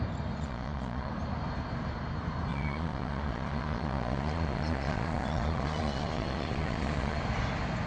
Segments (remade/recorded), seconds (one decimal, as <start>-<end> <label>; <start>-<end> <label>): 0.0-0.4 recorded; 0.4-1.1 remade; 1.1-2.5 recorded; 2.5-7.2 remade; 7.2-7.9 recorded